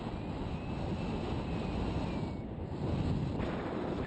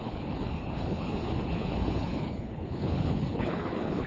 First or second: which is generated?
second